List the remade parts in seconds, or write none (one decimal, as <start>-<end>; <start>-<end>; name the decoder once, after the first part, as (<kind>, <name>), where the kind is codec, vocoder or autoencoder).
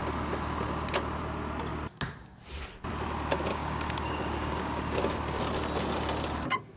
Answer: 3.5-5.0 (codec, DAC)